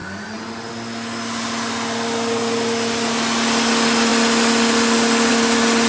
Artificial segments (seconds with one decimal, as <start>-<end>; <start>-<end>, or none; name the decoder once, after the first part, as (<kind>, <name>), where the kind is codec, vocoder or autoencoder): none